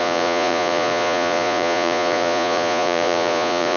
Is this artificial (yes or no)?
yes